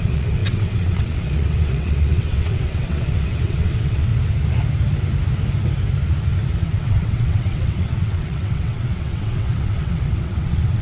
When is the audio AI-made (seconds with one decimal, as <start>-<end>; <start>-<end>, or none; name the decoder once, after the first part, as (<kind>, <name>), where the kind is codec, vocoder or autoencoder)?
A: 0.0-4.1 (vocoder, WaveNeXt); 6.6-10.8